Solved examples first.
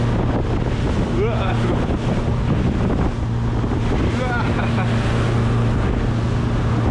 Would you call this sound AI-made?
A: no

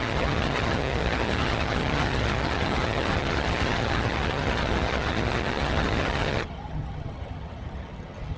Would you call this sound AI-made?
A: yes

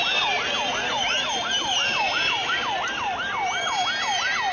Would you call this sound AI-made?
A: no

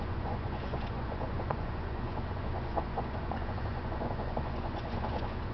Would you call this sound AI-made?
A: yes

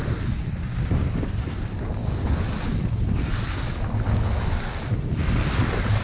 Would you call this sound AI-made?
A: no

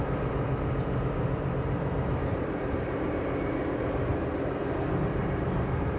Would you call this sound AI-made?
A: yes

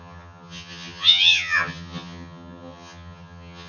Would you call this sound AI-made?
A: yes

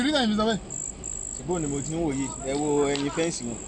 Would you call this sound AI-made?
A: no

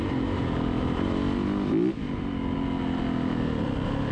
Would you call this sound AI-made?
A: no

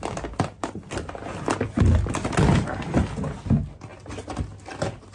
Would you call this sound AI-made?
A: no